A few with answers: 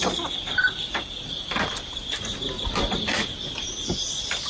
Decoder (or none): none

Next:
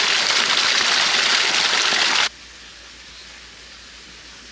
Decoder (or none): none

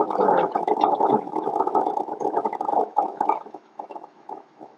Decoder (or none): autoencoder, DAC-VAE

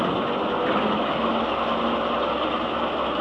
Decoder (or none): none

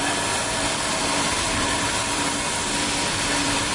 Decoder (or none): vocoder, BigVGAN v2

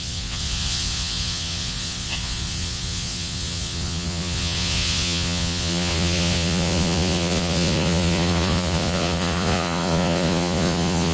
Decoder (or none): vocoder, Vocos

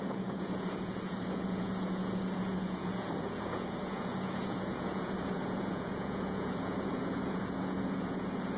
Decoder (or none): vocoder, Vocos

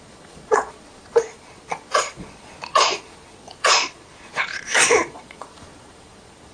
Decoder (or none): vocoder, Vocos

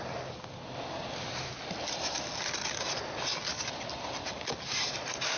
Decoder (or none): none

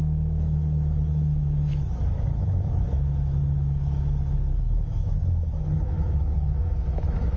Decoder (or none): autoencoder, DAC-VAE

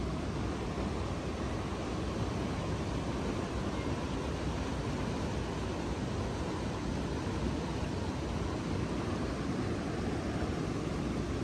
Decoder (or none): none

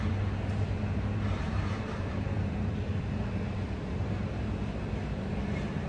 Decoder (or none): vocoder, BigVGAN v2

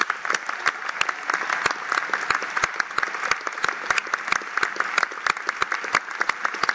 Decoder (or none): none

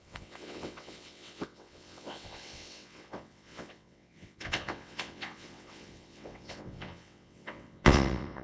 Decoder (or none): vocoder, WaveNeXt